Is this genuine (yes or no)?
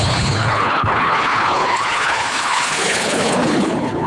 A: no